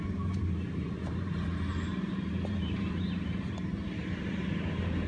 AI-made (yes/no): yes